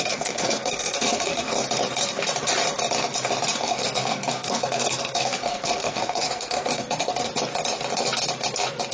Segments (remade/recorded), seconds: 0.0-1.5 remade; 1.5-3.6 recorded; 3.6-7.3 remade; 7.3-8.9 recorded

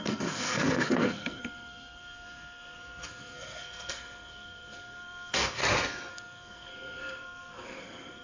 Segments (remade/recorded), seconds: 0.0-5.6 remade; 5.6-6.1 recorded; 6.1-8.2 remade